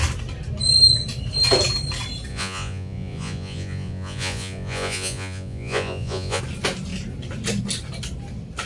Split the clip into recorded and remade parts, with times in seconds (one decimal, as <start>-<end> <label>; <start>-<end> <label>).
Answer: 0.0-2.3 recorded; 2.3-6.4 remade; 6.4-8.7 recorded

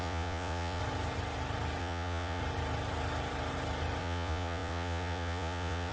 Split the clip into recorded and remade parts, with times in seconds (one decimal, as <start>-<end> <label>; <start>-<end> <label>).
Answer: 0.0-0.8 remade; 0.8-1.8 recorded; 1.8-2.4 remade; 2.4-4.0 recorded; 4.0-5.9 remade

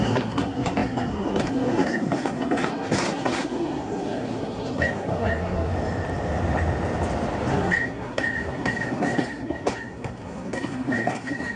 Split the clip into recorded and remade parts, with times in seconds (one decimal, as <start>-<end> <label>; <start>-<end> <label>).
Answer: 0.0-5.7 remade; 5.7-7.5 recorded; 7.5-11.6 remade

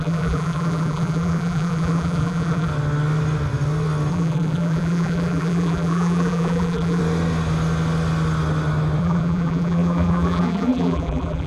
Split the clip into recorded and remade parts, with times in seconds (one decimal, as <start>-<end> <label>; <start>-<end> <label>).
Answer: 0.0-2.7 remade; 2.7-4.1 recorded; 4.1-7.0 remade; 7.0-9.0 recorded; 9.0-11.5 remade

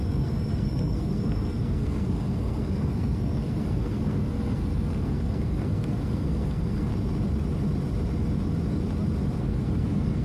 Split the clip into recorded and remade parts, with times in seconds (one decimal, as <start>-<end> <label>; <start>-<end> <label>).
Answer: 0.0-6.9 remade; 6.9-9.4 recorded; 9.4-10.2 remade

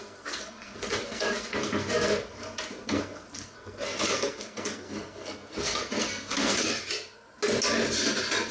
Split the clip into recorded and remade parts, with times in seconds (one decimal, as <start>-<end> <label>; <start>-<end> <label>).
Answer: 0.0-6.8 remade; 6.8-8.5 recorded

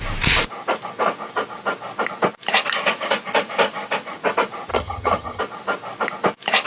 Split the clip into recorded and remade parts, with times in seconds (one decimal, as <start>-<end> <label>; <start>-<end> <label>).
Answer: 0.0-4.7 recorded; 4.7-5.4 remade; 5.4-6.7 recorded